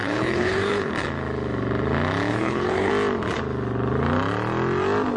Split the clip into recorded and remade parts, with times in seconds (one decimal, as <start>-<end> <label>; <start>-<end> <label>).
0.0-0.9 remade; 0.9-2.3 recorded; 2.3-2.9 remade; 2.9-5.2 recorded